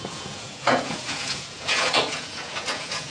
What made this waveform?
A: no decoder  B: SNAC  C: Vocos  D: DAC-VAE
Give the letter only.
C